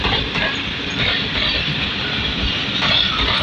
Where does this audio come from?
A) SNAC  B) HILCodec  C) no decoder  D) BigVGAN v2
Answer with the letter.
D